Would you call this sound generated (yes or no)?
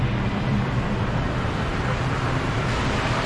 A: no